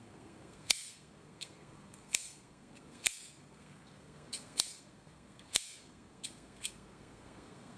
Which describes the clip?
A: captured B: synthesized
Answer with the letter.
B